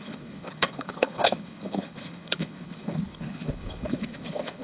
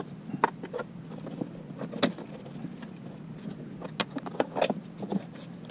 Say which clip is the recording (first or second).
second